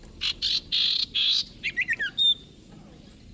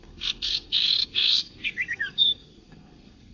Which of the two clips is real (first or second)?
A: first